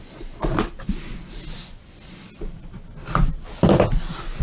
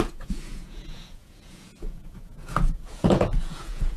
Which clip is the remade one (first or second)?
second